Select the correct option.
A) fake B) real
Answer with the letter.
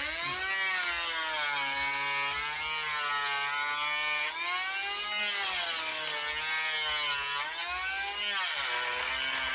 B